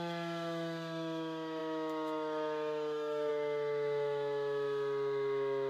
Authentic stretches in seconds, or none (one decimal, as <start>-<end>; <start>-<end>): none

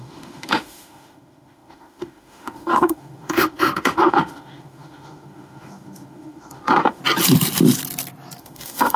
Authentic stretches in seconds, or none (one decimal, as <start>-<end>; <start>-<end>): 7.0-8.4

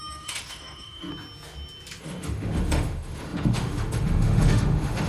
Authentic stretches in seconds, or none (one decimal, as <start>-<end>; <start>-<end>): 1.1-2.0

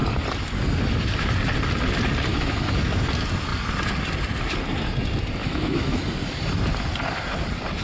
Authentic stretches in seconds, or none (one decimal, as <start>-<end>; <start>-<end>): 0.0-2.3; 3.1-5.4; 6.0-7.8

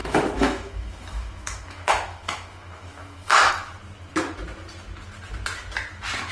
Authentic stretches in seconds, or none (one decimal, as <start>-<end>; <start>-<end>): 3.5-6.3